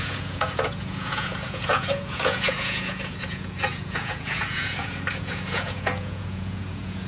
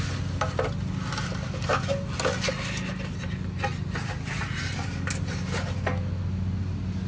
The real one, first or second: second